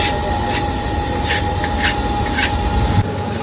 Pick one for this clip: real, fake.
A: real